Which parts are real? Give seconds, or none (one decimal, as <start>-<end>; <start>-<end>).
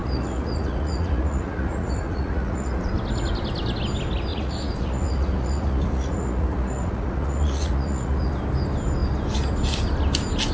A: 2.9-4.3; 8.3-10.5